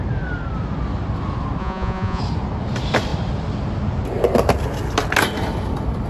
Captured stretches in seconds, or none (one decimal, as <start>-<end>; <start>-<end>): 0.0-1.6; 2.2-6.1